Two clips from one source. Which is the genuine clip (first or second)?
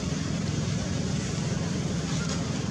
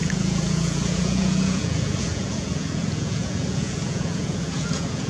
first